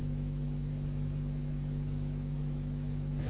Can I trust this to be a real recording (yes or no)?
no